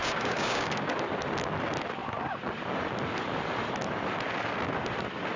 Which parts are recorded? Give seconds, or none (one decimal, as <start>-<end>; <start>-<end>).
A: 0.9-5.4